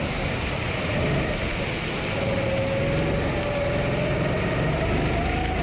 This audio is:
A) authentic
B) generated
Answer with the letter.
A